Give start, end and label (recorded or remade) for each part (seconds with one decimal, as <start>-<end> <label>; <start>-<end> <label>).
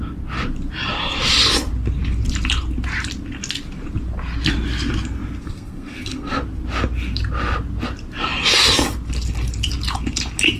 0.0-5.4 recorded; 5.4-6.4 remade; 6.4-10.6 recorded